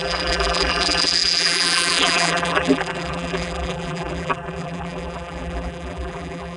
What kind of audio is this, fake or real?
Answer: fake